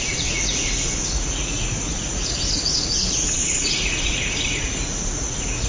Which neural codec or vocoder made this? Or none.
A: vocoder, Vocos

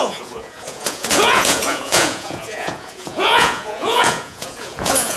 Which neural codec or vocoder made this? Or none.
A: vocoder, Vocos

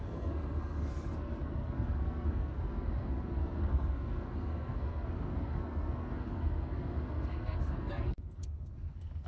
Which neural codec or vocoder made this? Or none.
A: codec, SNAC